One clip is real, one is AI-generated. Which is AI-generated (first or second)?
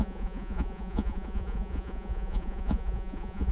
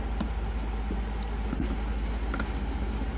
first